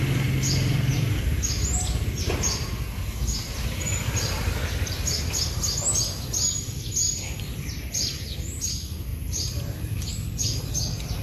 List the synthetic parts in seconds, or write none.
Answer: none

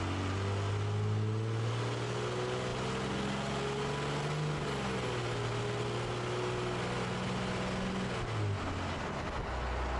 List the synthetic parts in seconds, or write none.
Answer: none

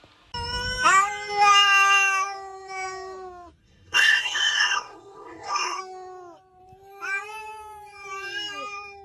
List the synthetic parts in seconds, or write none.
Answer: 3.6-5.8 (codec, SNAC)

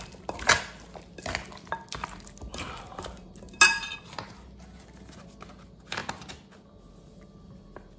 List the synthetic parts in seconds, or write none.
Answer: none

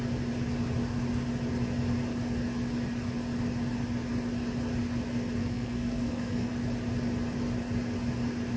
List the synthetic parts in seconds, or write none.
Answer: 5.4-6.5 (codec, SNAC)

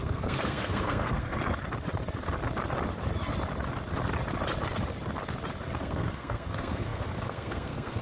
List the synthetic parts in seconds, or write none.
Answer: 0.0-1.4 (codec, SNAC); 5.8-8.0

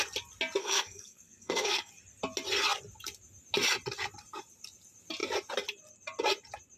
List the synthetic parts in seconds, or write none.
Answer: 0.6-1.9 (codec, SNAC)